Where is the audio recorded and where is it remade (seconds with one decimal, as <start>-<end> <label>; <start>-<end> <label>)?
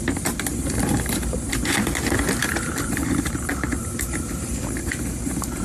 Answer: 0.0-0.5 recorded; 0.5-1.5 remade; 1.5-2.4 recorded; 2.4-5.6 remade